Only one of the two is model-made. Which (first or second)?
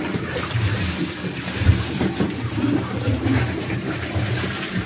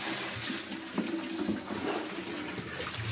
first